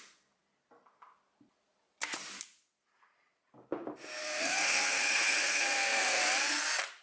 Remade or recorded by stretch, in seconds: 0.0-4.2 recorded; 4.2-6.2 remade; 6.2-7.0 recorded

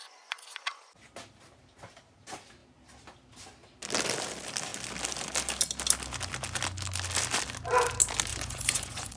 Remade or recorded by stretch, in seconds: 0.0-0.8 remade; 0.8-8.3 recorded; 8.3-9.2 remade

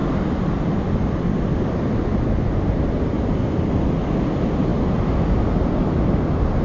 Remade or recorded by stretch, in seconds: 0.0-6.6 recorded

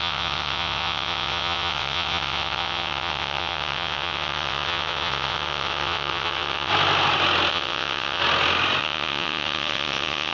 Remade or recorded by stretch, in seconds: 0.0-6.7 remade; 6.7-7.5 recorded; 7.5-8.2 remade; 8.2-8.8 recorded; 8.8-10.3 remade

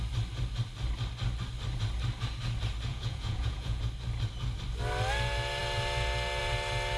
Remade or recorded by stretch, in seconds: 0.0-2.9 recorded; 2.9-3.9 remade; 3.9-7.0 recorded